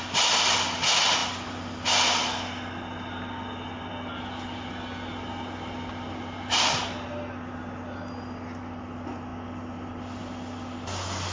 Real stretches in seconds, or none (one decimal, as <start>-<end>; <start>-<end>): 0.0-11.3